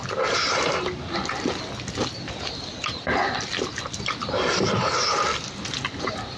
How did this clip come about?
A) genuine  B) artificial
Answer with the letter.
A